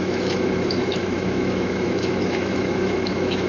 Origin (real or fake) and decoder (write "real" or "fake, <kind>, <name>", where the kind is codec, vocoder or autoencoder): fake, autoencoder, DAC-VAE